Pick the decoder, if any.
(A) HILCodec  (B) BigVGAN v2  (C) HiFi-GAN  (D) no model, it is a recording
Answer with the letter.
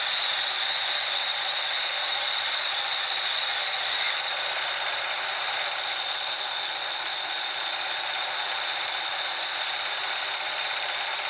B